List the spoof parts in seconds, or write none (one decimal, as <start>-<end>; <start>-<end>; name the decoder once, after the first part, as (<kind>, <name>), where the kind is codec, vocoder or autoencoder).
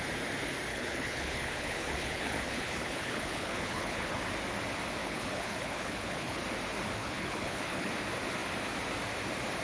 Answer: 0.7-4.2 (codec, HILCodec); 5.0-6.4; 7.0-7.9